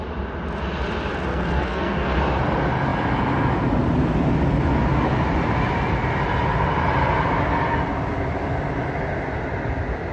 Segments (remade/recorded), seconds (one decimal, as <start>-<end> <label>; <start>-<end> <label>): 0.0-1.3 recorded; 1.3-2.2 remade; 2.2-10.1 recorded